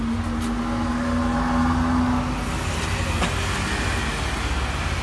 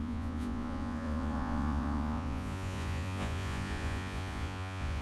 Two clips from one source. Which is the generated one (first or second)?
second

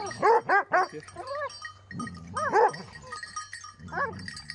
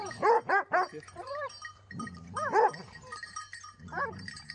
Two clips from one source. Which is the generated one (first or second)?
second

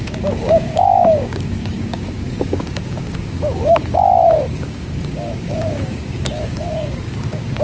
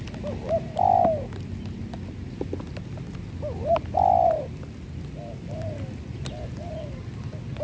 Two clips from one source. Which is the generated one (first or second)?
first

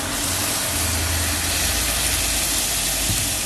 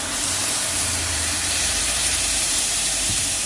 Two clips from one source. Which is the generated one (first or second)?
second